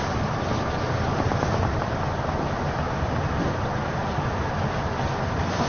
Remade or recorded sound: recorded